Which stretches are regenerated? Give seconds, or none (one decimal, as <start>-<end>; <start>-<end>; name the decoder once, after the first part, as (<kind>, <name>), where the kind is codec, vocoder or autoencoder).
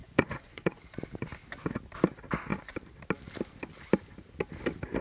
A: 0.0-0.8 (vocoder, Vocos)